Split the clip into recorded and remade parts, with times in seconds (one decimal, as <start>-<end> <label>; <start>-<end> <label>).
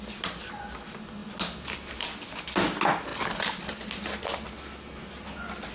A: 0.0-5.7 recorded